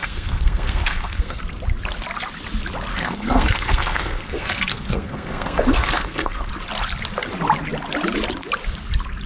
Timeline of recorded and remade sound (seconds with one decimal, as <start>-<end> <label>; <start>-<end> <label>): 0.0-1.4 remade; 1.4-2.9 recorded; 2.9-6.5 remade; 6.5-9.3 recorded